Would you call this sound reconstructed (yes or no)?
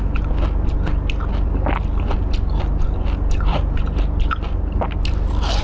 no